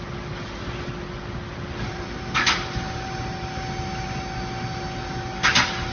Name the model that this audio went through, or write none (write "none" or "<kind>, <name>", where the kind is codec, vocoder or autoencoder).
none